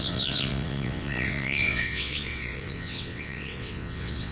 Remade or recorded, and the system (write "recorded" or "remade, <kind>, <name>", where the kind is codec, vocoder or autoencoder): remade, vocoder, WaveNeXt